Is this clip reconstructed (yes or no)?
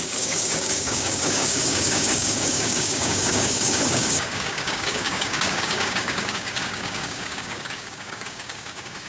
yes